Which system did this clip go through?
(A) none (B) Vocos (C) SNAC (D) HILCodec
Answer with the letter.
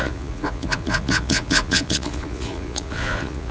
B